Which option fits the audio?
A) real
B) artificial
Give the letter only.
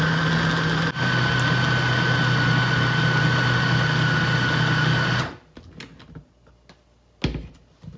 A